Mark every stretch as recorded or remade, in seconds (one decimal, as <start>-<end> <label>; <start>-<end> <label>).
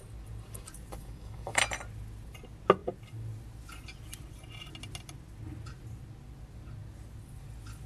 0.0-1.0 recorded; 1.0-1.6 remade; 1.6-7.9 recorded